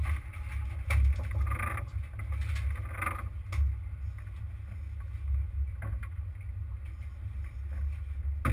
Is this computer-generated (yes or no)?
no